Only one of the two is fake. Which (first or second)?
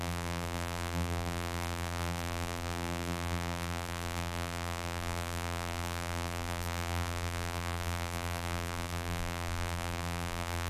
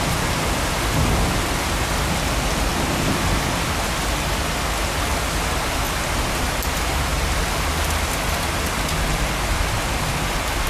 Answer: first